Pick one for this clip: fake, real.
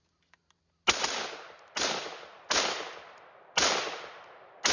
real